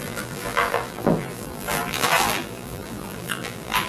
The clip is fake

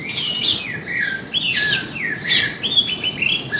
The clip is real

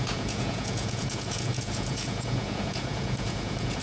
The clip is fake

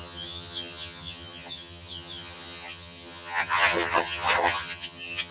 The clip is fake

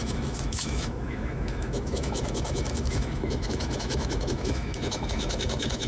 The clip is fake